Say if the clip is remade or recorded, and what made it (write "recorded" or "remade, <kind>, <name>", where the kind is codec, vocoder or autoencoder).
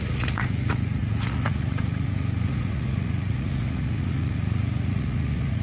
remade, vocoder, Vocos